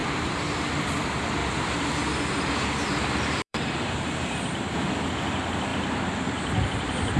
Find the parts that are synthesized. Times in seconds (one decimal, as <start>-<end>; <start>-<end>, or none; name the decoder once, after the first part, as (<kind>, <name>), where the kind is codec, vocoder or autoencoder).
0.0-0.7 (vocoder, BigVGAN v2); 1.4-4.4